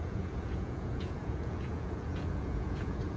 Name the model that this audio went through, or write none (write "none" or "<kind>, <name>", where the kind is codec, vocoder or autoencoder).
vocoder, Vocos